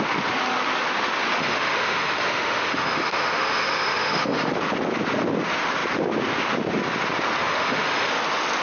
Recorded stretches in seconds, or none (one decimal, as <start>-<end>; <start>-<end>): 0.0-1.4; 4.5-7.4; 8.1-8.6